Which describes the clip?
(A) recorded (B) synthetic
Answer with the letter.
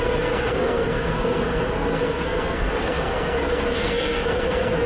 B